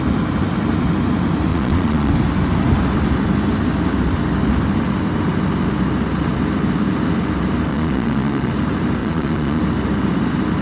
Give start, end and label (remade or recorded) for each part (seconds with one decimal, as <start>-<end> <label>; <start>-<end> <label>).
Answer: 0.0-1.5 recorded; 1.5-2.1 remade; 2.1-7.7 recorded; 7.7-8.5 remade; 8.5-9.0 recorded; 9.0-9.6 remade; 9.6-10.6 recorded